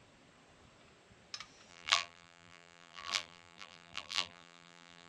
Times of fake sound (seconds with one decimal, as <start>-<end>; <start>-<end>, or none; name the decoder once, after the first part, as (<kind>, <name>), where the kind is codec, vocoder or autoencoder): 1.7-5.1 (vocoder, BigVGAN v2)